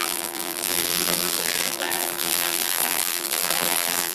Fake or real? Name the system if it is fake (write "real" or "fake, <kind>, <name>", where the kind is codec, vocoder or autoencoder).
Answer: fake, vocoder, BigVGAN v2